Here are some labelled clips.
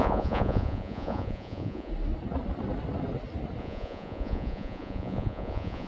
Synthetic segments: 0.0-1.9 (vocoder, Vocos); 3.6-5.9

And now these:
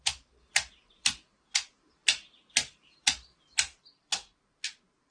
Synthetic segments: 0.0-2.0 (vocoder, BigVGAN v2); 2.5-5.1

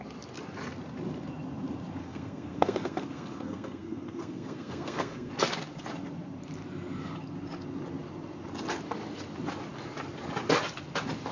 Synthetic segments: 2.0-5.3 (codec, SNAC)

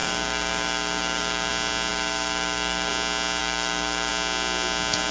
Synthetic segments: 0.0-1.5 (codec, DAC); 1.9-2.9; 3.4-4.1

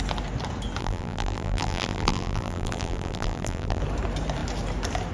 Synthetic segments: 0.8-3.8 (vocoder, BigVGAN v2)